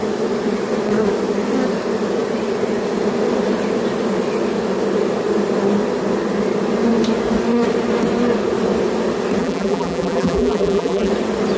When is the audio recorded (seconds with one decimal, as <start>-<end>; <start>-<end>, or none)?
0.0-9.4; 11.1-11.6